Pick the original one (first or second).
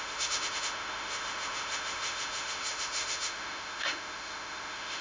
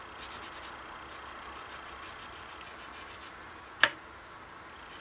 second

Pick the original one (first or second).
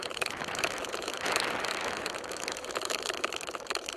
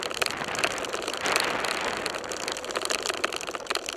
second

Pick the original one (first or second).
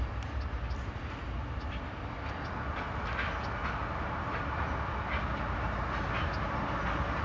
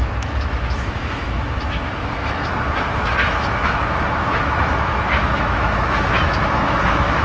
first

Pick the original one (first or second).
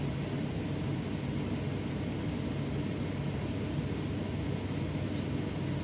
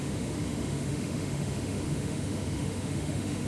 first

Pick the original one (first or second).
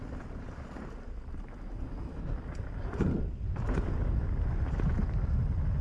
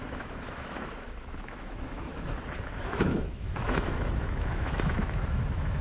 first